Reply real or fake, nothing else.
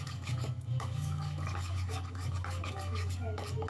fake